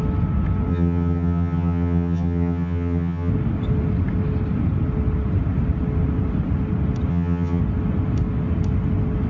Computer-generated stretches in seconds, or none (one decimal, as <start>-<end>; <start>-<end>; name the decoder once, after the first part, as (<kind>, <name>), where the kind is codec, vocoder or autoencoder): 0.7-3.3 (vocoder, HiFi-GAN); 7.1-7.6

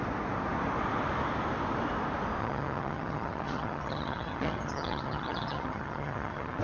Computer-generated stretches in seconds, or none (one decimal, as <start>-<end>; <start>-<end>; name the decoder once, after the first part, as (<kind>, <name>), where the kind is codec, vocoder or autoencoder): 2.4-6.6 (vocoder, HiFi-GAN)

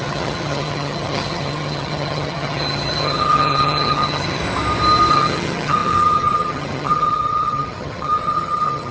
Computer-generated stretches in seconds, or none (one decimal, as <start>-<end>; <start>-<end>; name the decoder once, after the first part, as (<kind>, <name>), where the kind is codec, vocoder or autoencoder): 0.0-4.4 (vocoder, HiFi-GAN); 5.1-8.9

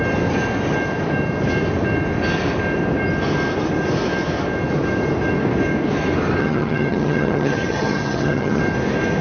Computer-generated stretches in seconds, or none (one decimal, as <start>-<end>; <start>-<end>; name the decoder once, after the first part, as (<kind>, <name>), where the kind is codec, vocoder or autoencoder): 6.4-8.6 (vocoder, HiFi-GAN)

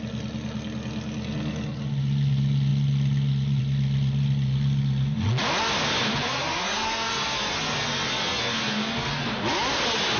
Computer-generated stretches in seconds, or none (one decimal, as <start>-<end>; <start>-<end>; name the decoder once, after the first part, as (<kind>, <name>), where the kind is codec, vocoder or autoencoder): none

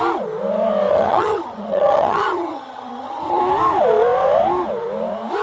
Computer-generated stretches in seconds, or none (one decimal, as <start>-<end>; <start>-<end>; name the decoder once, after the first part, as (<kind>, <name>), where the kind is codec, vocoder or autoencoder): 0.9-3.4 (vocoder, HiFi-GAN)